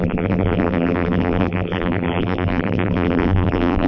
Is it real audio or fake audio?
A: fake